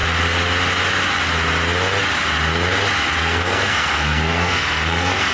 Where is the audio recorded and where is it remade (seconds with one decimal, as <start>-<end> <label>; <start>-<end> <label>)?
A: 0.0-3.2 recorded; 3.2-5.3 remade